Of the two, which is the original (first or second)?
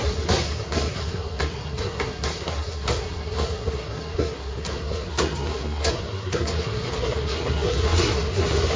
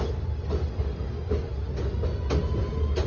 second